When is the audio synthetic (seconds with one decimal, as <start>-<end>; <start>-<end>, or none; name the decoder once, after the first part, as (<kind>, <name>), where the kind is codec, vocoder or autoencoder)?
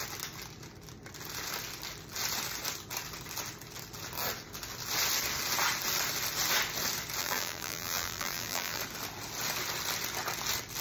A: 7.2-8.8 (vocoder, BigVGAN v2)